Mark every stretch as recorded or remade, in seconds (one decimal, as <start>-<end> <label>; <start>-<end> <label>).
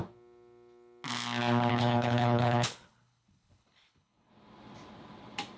0.0-1.7 recorded; 1.7-4.3 remade; 4.3-5.6 recorded